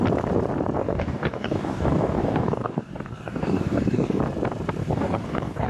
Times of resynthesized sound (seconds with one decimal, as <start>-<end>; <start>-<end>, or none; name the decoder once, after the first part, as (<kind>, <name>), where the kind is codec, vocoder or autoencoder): 0.8-4.2 (codec, DAC); 4.8-5.7